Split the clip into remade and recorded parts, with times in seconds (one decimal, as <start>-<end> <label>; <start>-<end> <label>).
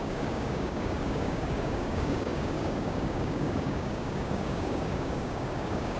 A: 0.0-6.0 remade